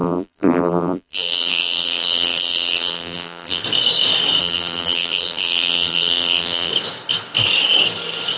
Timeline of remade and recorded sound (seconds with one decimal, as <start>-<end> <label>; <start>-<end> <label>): 0.0-3.6 remade; 3.6-4.4 recorded; 4.4-6.7 remade; 6.7-8.4 recorded